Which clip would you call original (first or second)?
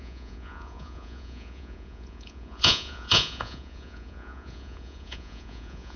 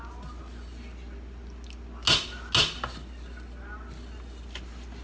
second